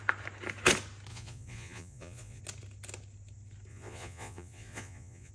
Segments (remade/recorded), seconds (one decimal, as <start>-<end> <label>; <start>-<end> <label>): 0.0-1.1 recorded; 1.1-2.4 remade; 2.4-3.7 recorded; 3.7-5.3 remade